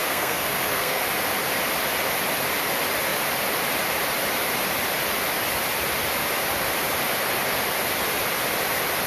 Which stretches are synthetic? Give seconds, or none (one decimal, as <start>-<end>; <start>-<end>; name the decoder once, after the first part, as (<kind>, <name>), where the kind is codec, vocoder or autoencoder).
0.0-1.0 (codec, SNAC)